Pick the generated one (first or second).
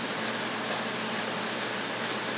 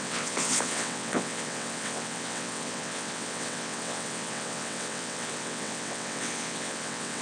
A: second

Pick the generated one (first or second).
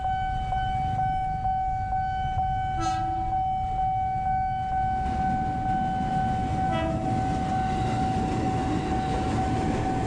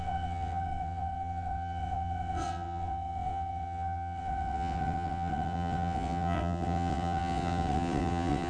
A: second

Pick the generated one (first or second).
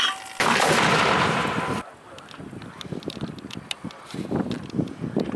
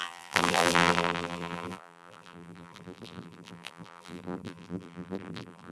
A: second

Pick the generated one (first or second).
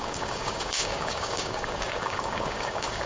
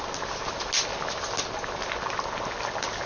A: first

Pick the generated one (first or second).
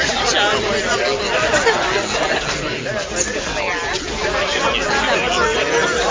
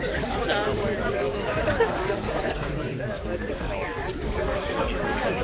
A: second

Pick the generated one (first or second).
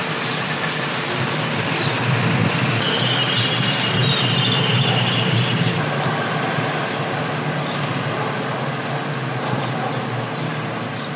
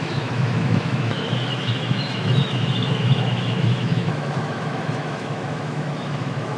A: second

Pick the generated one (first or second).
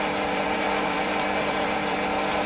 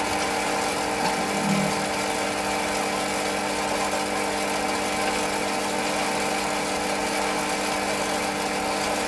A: first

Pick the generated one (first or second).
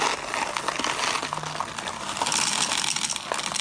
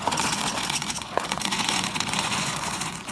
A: second